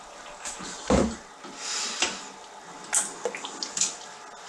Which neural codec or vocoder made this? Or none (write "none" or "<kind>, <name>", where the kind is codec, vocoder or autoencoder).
none